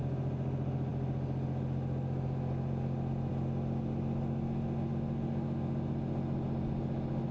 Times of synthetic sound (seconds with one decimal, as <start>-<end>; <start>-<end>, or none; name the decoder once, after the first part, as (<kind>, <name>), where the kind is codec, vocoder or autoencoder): none